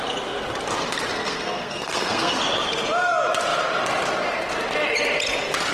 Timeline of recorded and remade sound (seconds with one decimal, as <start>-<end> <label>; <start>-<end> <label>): 0.0-1.1 recorded; 1.1-2.4 remade; 2.4-5.7 recorded

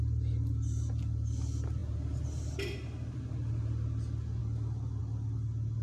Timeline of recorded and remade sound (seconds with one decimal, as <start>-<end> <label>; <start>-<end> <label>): 0.0-5.8 recorded

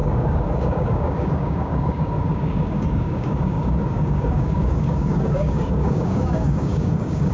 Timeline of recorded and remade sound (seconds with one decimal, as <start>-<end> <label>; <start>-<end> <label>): 0.0-7.3 remade

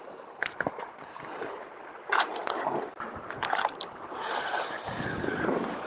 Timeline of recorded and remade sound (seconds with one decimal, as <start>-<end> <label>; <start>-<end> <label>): 0.0-5.9 recorded

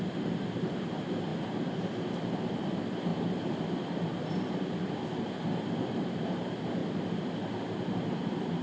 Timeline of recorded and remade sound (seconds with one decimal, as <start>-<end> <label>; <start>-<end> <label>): 0.0-4.1 remade; 4.1-5.6 recorded; 5.6-6.8 remade; 6.8-7.6 recorded; 7.6-8.6 remade